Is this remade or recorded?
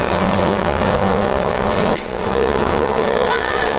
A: remade